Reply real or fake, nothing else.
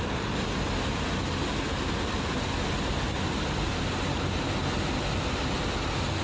real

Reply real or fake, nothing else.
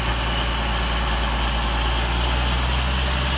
real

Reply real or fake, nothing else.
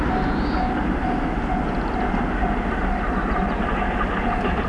real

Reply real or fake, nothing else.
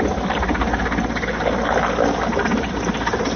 real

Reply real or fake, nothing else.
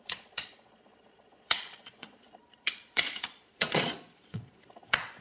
fake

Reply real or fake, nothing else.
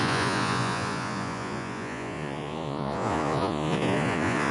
fake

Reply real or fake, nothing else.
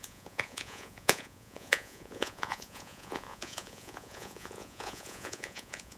fake